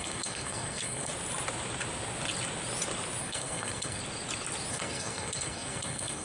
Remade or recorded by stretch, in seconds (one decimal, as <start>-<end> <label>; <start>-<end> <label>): 0.0-1.1 remade; 1.1-3.2 recorded; 3.2-4.0 remade; 4.0-4.7 recorded; 4.7-6.2 remade